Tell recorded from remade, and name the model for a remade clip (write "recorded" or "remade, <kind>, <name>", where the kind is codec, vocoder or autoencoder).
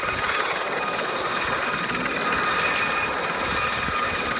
recorded